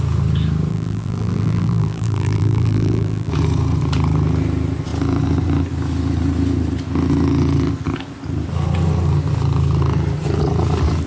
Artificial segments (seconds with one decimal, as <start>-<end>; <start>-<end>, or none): 0.7-3.3